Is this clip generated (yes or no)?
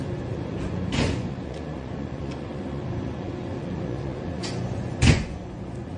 yes